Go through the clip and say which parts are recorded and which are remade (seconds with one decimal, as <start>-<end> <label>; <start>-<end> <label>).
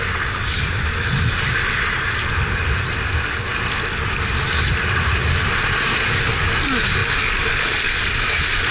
0.0-8.7 recorded